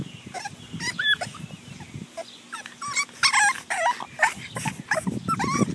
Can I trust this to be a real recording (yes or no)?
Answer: yes